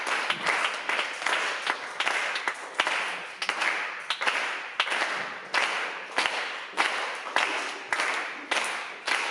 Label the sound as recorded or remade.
recorded